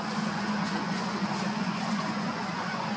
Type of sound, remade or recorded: remade